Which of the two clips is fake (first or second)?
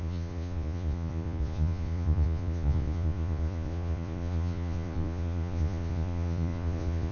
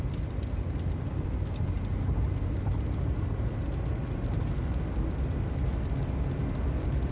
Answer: first